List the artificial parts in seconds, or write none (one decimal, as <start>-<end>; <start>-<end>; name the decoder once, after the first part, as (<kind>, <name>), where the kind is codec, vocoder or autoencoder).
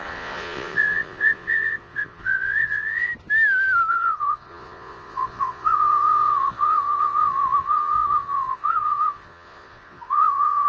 0.0-3.1 (vocoder, Vocos); 3.9-10.7